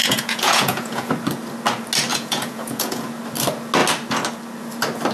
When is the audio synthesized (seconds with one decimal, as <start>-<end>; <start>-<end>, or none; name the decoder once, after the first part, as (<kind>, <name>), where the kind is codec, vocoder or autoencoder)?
0.0-1.1 (vocoder, Vocos); 2.1-3.1